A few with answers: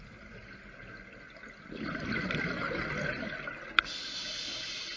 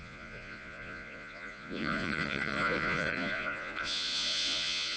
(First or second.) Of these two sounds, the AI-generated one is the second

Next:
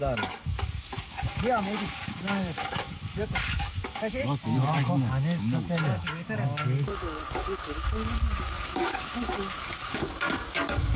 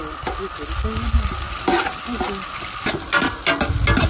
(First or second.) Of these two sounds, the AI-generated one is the first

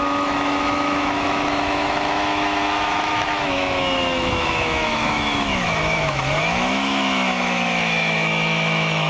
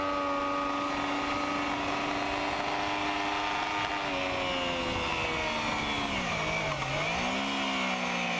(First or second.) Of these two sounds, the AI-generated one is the first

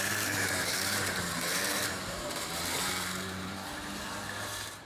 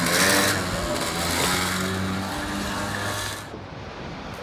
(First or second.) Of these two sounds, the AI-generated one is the first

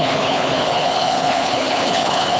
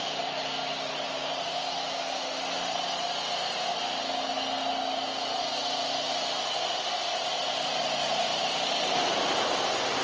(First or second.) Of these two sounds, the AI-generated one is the first